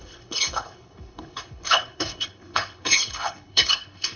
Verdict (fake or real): fake